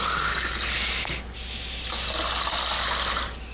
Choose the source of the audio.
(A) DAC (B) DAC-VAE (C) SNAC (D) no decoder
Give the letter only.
D